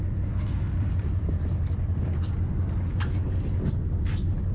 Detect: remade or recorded recorded